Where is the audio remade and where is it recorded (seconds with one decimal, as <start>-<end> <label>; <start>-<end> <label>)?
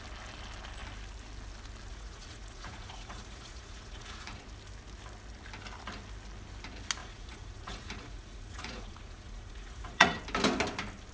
0.0-1.9 recorded; 1.9-4.4 remade; 4.4-7.0 recorded; 7.0-10.2 remade; 10.2-11.1 recorded